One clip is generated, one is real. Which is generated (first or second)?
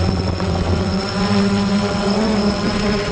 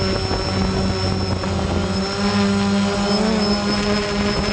first